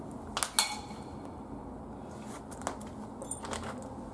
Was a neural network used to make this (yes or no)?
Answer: no